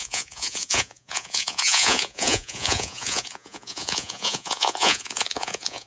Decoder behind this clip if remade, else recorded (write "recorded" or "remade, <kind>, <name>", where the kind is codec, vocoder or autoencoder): remade, vocoder, Vocos